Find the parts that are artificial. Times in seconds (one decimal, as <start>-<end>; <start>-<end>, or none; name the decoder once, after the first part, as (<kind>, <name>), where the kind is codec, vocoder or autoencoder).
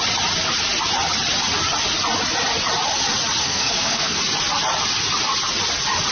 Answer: 3.4-4.2 (codec, SNAC)